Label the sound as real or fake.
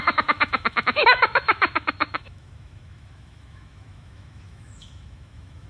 fake